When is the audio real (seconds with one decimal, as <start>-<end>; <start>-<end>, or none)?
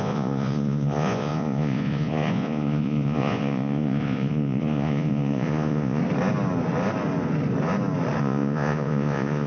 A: 6.0-8.2